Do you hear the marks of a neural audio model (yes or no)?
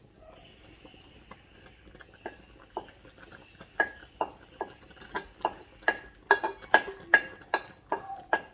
no